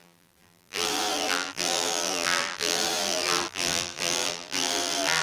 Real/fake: fake